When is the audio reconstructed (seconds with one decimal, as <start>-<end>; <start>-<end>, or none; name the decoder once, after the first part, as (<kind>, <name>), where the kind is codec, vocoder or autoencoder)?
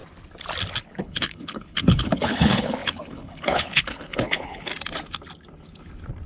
0.9-4.7 (codec, HILCodec)